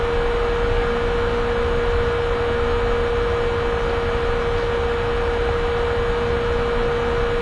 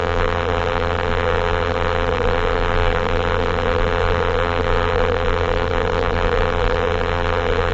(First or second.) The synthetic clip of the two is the second